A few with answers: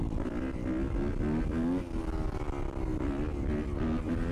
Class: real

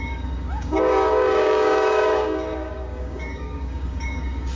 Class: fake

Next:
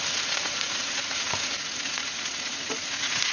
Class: fake